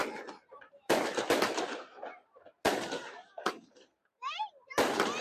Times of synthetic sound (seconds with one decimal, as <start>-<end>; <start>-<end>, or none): 0.7-5.2